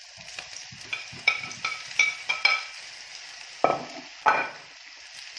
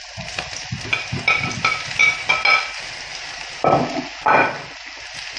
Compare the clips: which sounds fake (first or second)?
first